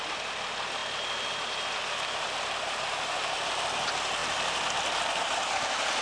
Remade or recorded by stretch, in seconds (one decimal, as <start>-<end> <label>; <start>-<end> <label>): 0.0-6.0 recorded